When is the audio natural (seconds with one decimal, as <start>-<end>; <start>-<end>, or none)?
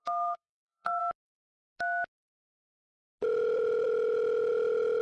1.0-5.0